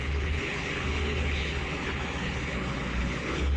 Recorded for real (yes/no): no